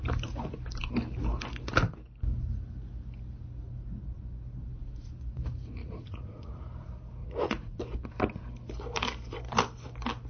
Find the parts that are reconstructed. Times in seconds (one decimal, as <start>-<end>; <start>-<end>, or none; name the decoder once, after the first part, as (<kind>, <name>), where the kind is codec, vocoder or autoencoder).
5.8-6.6 (vocoder, Vocos); 7.2-7.8